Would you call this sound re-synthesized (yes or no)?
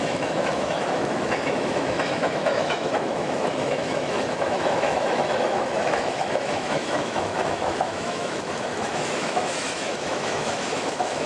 yes